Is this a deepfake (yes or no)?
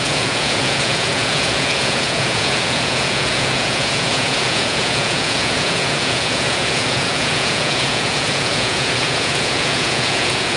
yes